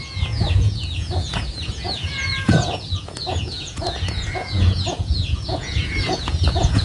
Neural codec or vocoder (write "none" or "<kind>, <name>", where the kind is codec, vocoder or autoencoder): vocoder, Vocos